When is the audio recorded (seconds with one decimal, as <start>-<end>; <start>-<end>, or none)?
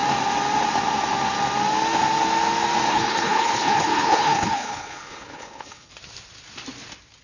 0.0-2.9; 5.9-7.2